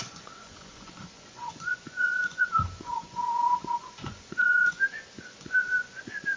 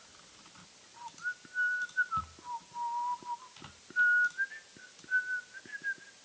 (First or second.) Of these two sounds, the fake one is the first